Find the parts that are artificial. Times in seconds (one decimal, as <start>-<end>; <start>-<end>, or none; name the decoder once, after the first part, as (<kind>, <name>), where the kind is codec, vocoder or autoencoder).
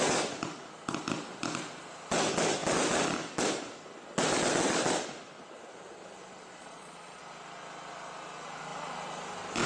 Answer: 6.6-7.2 (vocoder, Vocos)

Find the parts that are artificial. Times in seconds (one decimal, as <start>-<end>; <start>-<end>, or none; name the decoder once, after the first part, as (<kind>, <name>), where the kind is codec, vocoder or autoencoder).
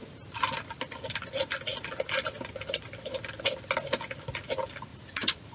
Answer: 4.9-5.5 (vocoder, Vocos)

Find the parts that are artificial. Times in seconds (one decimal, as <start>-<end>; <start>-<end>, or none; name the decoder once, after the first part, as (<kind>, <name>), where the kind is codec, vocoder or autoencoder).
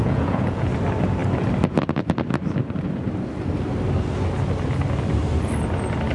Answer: 0.0-0.7 (vocoder, Vocos)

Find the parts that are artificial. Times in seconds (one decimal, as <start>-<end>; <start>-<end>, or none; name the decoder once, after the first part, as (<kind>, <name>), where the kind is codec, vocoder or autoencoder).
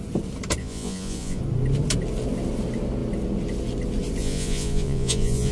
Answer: 0.6-1.4 (vocoder, Vocos); 4.2-5.5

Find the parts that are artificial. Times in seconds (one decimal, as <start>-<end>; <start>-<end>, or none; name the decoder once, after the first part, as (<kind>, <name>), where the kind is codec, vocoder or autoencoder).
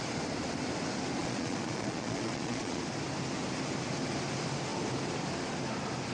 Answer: 1.2-2.8 (vocoder, Vocos)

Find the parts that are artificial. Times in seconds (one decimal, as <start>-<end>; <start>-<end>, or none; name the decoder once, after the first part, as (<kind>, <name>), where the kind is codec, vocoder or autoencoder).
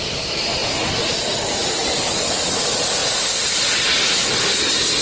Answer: none